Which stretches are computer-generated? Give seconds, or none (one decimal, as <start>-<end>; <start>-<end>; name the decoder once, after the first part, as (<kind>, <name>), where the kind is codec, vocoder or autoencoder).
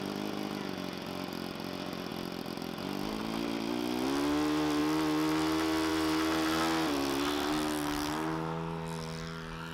none